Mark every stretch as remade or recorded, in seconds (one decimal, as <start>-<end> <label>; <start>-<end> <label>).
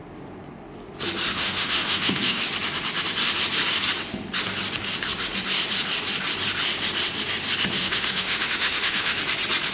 0.0-1.3 recorded; 1.3-2.4 remade; 2.4-7.8 recorded; 7.8-9.2 remade; 9.2-9.7 recorded